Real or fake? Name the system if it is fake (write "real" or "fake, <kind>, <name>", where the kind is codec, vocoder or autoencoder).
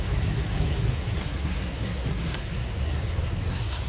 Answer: fake, codec, SNAC